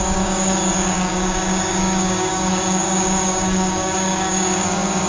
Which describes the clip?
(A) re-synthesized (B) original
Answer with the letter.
A